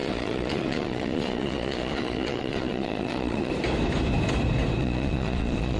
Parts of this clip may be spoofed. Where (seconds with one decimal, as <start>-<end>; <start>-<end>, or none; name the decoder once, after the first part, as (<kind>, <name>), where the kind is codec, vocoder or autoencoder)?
0.0-3.5 (vocoder, Vocos); 4.8-5.8